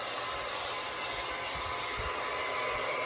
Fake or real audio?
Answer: real